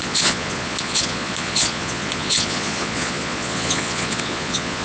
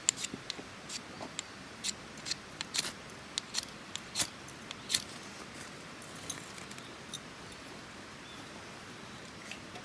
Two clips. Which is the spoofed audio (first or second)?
first